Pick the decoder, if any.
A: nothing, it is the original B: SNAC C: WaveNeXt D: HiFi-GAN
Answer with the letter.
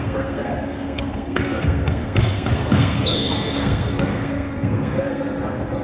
B